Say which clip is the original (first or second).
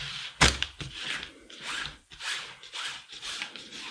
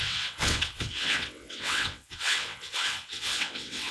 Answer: first